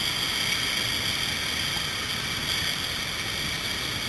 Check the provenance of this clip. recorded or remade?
recorded